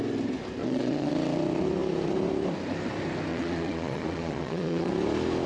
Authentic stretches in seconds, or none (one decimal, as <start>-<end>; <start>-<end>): 0.0-0.6; 1.1-3.3; 4.9-5.5